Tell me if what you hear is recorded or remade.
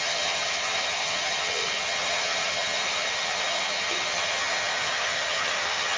remade